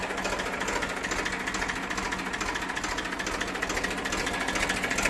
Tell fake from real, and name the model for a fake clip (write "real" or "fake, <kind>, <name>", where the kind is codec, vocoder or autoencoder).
real